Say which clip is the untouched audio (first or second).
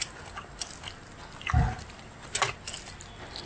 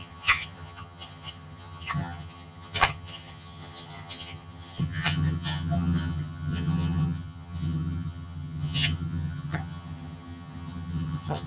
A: first